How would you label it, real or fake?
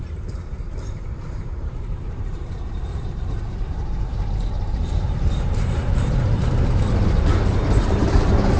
fake